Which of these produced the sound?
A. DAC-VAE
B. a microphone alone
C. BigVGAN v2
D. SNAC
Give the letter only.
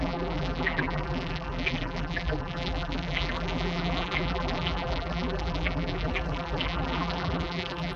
C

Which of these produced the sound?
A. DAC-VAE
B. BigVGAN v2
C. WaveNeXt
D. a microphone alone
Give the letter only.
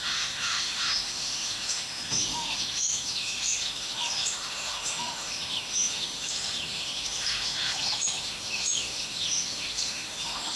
A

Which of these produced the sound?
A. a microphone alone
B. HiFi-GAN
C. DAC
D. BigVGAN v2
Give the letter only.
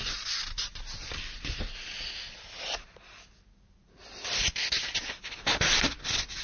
A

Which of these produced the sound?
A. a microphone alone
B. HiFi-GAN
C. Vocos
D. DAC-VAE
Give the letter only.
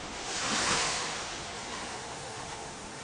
D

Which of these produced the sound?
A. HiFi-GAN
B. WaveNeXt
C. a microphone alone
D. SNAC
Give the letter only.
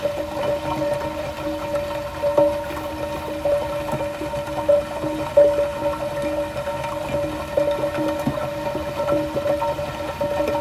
C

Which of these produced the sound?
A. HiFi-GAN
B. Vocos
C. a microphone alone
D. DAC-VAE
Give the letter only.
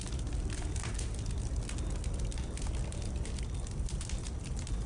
C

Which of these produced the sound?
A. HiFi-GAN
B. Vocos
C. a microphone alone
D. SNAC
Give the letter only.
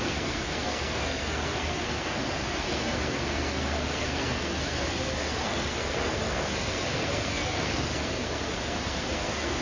D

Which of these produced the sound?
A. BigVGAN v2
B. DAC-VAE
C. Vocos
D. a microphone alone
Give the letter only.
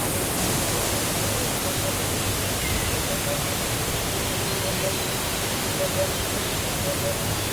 D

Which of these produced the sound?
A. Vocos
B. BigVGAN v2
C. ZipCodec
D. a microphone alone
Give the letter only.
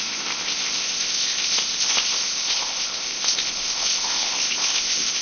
C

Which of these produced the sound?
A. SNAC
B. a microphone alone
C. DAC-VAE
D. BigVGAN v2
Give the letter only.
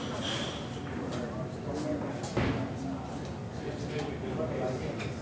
B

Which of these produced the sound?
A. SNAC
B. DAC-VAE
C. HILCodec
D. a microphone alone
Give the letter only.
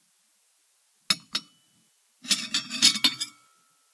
D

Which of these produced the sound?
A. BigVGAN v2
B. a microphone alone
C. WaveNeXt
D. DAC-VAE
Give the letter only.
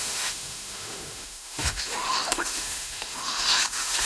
D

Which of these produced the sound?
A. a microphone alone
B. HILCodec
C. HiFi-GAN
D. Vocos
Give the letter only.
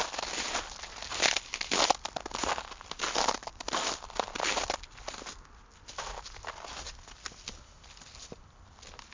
A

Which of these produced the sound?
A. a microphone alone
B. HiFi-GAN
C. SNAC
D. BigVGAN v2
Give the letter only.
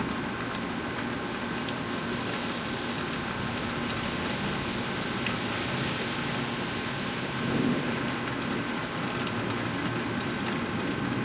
A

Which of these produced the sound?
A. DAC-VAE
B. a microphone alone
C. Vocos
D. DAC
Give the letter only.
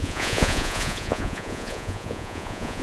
C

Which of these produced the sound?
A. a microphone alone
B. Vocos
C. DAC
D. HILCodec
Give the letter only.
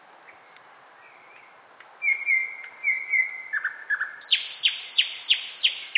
A